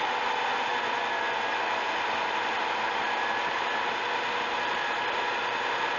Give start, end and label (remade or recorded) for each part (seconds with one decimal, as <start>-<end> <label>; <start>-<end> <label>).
0.0-6.0 recorded